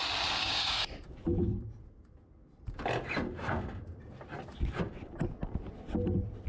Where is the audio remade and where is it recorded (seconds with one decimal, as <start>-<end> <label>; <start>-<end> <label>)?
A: 0.0-0.4 recorded; 0.4-0.9 remade; 0.9-6.5 recorded